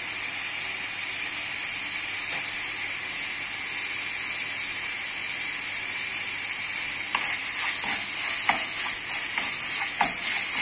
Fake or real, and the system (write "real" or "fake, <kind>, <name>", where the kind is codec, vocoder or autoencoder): real